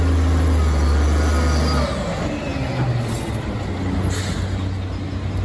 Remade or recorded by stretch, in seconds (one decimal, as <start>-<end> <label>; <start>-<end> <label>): 0.0-5.4 recorded